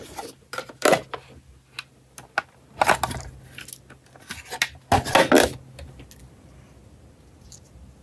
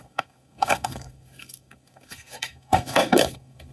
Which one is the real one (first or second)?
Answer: first